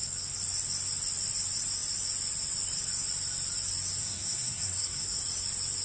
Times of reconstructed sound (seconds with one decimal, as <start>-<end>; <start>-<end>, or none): 4.0-5.2